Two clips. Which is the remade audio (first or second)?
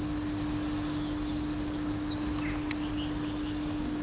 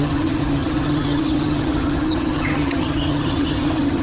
second